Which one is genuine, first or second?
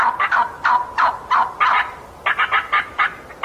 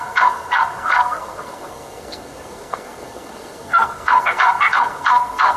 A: first